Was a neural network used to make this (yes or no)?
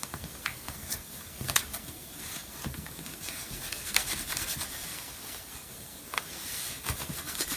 yes